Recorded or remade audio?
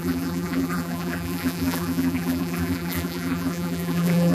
remade